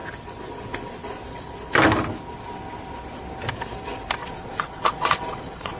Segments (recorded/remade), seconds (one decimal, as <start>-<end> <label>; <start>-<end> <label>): 0.0-4.2 recorded; 4.2-5.8 remade